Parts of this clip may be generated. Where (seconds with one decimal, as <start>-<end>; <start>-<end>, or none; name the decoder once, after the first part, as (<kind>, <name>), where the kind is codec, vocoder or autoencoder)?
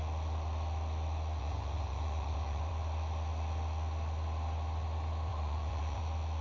1.4-2.7 (vocoder, Vocos); 5.3-6.0